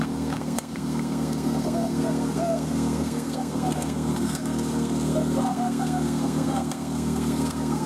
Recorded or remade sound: remade